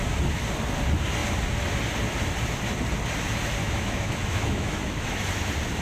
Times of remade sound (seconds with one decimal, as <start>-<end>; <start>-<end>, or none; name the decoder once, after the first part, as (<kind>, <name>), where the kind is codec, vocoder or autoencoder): 3.6-5.2 (autoencoder, DAC-VAE)